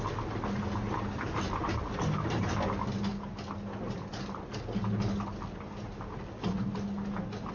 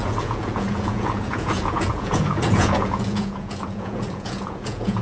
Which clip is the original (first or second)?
first